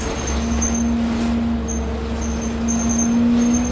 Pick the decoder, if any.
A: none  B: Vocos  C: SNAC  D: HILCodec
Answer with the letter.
A